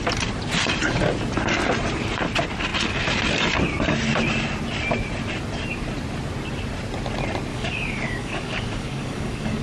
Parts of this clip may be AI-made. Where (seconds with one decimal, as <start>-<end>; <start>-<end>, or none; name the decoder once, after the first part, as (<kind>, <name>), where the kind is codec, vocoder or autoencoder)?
7.5-9.6 (codec, DAC)